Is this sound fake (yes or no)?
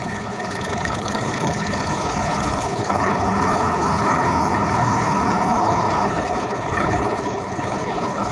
yes